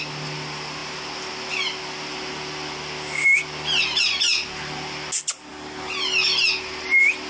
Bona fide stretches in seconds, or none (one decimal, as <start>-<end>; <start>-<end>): 0.0-7.3